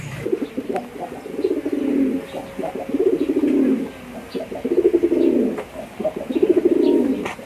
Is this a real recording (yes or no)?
yes